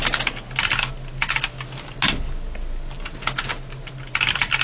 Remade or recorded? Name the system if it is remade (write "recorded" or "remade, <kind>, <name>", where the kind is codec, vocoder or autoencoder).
recorded